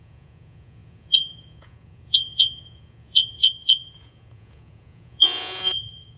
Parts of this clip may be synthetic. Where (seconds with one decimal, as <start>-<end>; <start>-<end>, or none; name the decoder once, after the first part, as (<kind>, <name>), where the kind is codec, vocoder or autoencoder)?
0.0-6.2 (vocoder, Vocos)